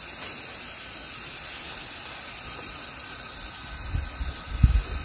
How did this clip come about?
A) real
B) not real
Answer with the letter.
A